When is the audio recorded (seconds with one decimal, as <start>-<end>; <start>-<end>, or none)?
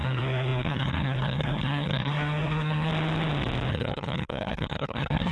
2.9-3.7